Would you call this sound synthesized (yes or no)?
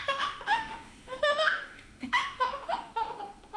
yes